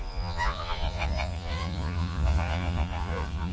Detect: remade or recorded remade